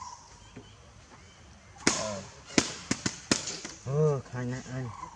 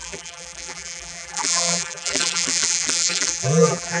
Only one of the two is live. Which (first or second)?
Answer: first